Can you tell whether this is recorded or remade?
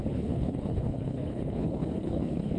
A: remade